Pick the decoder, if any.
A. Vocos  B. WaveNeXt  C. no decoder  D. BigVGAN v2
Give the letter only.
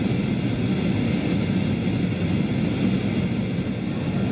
C